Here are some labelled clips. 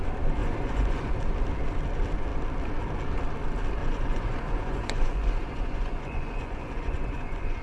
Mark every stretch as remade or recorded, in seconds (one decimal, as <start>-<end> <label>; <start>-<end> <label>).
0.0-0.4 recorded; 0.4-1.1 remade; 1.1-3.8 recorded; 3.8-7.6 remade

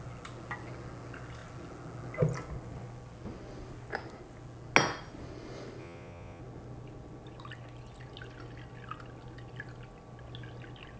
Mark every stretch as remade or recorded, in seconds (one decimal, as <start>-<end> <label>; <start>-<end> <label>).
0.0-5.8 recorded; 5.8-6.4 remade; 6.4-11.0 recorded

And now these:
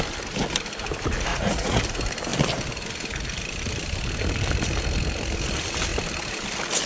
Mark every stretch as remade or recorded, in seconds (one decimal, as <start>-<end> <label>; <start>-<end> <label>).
0.0-1.3 recorded; 1.3-1.8 remade; 1.8-6.9 recorded